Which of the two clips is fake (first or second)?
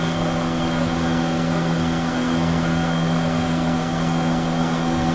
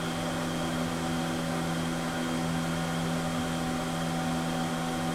first